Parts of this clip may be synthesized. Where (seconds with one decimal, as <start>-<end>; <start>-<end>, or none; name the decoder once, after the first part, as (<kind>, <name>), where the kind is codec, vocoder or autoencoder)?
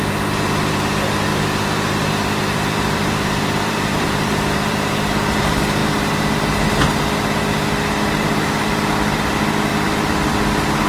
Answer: 1.3-4.9 (vocoder, BigVGAN v2); 9.7-10.3